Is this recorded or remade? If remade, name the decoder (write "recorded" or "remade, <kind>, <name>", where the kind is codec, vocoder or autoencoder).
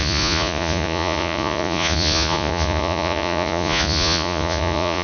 remade, vocoder, Vocos